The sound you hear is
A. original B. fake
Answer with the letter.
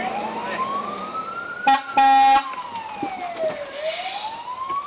A